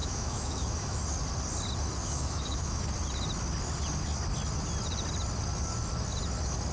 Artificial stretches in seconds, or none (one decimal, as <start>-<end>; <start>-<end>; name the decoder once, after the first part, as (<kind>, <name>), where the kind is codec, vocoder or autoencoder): 0.0-1.0 (autoencoder, DAC-VAE); 2.0-2.8